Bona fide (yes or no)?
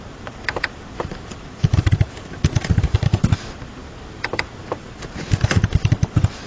no